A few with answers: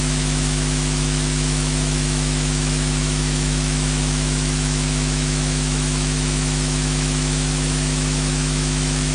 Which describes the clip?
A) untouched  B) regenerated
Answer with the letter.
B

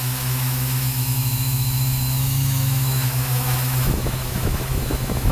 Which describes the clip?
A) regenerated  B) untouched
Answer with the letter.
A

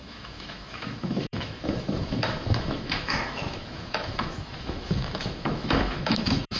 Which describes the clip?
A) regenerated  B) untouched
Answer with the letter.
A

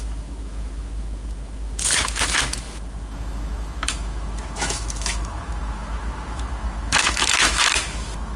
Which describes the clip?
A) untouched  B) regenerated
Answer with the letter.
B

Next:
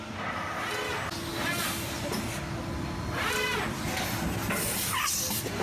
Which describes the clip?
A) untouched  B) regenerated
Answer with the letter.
A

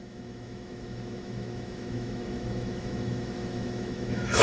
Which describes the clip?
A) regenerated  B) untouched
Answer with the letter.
A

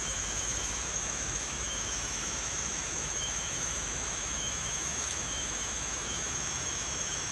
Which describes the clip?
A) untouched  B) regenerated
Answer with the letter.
B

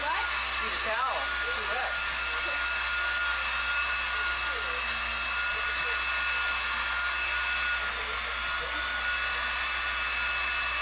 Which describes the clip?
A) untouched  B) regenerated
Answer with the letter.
A